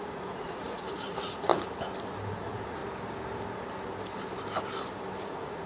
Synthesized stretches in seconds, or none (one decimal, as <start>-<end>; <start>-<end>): 0.0-1.5; 2.3-2.8; 5.2-5.7